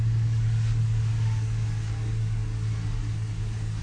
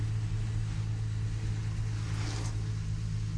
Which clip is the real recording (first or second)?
second